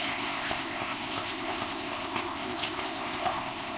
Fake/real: fake